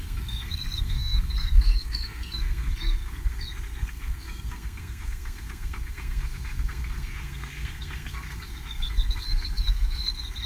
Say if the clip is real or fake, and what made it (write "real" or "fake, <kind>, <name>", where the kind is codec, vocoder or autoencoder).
fake, codec, SNAC